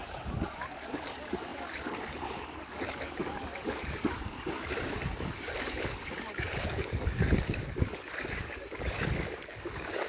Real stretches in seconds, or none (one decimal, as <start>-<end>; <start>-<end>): none